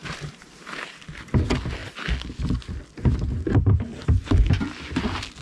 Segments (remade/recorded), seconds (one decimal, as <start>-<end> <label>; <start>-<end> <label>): 0.0-1.3 remade; 1.3-5.4 recorded